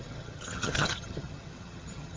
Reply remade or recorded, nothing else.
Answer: remade